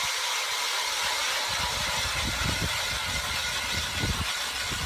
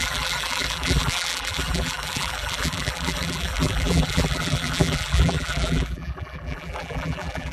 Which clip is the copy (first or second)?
second